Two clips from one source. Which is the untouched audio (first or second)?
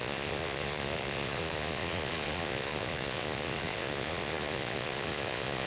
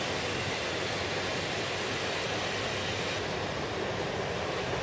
second